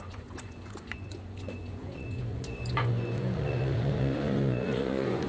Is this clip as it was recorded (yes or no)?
no